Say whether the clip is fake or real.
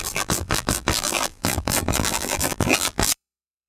fake